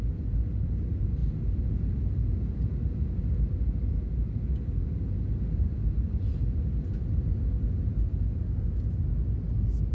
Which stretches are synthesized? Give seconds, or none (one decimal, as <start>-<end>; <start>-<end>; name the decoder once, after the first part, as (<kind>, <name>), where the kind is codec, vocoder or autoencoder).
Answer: none